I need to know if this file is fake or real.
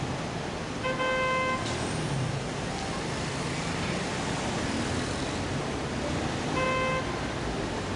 real